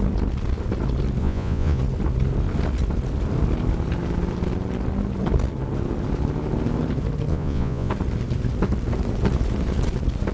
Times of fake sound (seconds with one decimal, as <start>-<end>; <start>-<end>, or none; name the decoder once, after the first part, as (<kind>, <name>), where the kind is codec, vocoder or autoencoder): 1.2-1.8 (vocoder, Vocos); 7.3-7.9